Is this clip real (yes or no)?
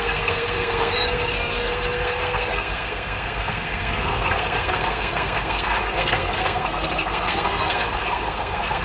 no